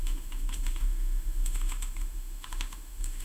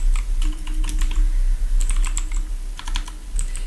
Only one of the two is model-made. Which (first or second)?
first